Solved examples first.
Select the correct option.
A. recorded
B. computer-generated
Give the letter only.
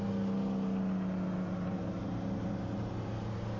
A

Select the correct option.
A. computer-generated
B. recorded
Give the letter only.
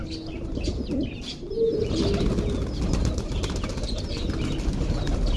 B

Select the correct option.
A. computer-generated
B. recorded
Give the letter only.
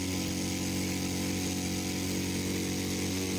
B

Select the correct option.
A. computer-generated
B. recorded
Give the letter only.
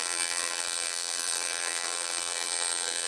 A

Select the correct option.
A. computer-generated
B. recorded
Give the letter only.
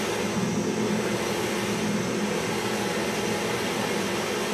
B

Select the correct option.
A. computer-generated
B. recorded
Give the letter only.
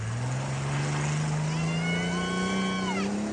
B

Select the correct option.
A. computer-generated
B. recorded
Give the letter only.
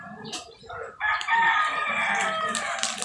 B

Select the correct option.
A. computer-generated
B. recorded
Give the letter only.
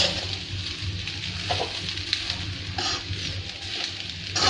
B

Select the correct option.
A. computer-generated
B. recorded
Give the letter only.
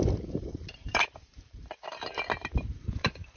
A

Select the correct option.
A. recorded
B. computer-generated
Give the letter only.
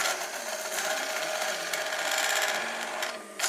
A